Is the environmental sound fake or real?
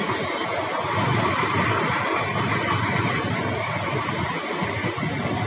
real